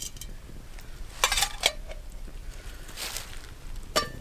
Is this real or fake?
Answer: real